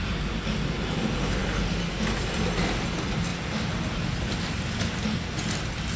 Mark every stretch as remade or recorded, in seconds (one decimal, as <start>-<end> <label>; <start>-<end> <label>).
0.0-6.0 recorded